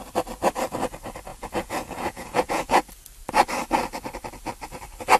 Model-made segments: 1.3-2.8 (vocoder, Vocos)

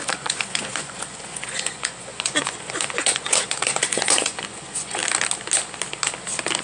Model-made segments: 0.0-5.0 (vocoder, Vocos)

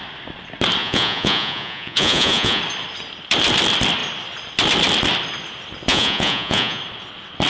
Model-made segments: 0.8-2.6 (vocoder, Vocos); 5.9-6.8

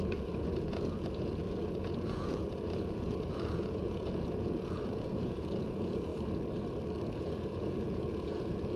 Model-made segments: 0.0-6.1 (vocoder, Vocos); 7.2-8.8

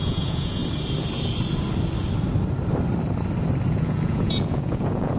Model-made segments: 0.0-0.6 (vocoder, Vocos); 3.7-5.2